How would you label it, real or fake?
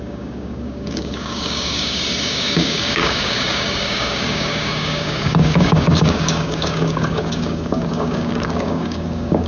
fake